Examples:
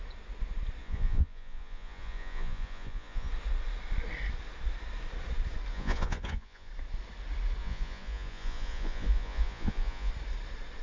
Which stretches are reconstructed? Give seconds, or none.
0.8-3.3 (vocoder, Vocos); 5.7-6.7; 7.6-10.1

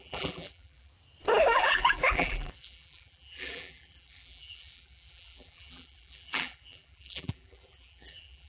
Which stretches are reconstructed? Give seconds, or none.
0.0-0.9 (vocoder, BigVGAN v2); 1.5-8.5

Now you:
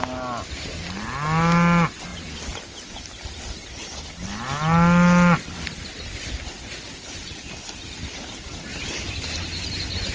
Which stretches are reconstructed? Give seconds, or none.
none

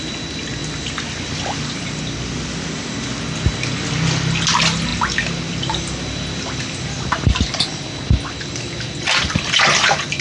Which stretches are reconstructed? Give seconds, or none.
none